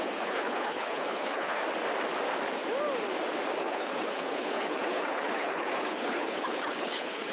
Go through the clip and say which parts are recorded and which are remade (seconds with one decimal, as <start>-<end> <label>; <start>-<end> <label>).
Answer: 0.0-1.6 remade; 1.6-3.6 recorded; 3.6-7.3 remade